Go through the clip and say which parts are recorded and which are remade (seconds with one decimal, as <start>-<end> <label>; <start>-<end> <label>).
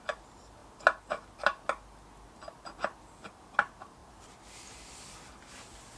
0.0-6.0 recorded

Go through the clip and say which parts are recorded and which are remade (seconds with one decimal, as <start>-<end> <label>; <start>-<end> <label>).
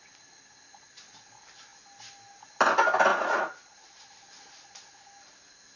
0.0-3.1 recorded; 3.1-4.0 remade; 4.0-5.8 recorded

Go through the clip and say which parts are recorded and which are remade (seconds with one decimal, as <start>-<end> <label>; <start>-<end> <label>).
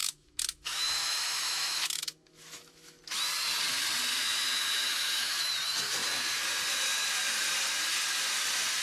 0.0-3.0 remade; 3.0-4.1 recorded; 4.1-5.5 remade; 5.5-8.8 recorded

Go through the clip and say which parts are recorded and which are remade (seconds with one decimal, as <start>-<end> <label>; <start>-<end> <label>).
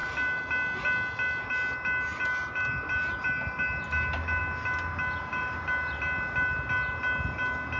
0.0-7.8 recorded